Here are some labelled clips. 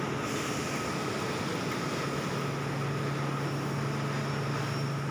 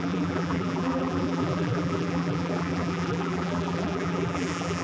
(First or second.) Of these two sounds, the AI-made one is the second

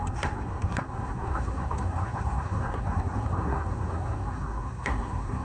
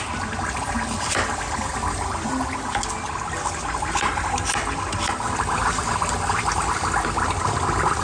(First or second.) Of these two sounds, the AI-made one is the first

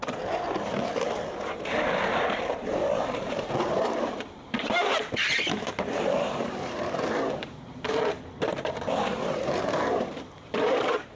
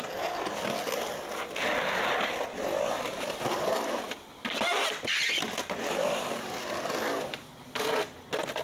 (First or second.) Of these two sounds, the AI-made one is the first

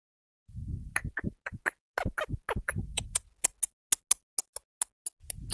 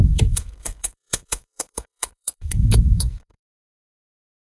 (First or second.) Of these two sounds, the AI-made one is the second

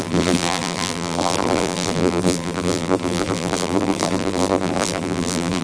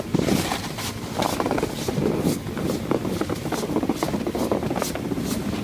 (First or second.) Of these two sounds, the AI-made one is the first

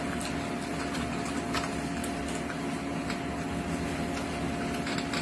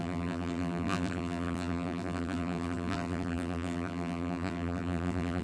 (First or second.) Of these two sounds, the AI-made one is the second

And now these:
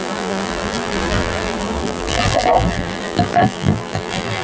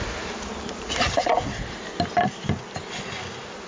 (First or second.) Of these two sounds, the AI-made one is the first